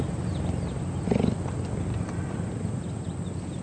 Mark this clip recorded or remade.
recorded